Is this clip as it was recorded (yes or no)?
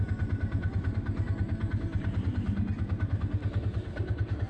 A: yes